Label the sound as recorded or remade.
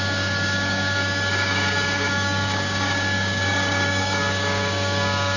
remade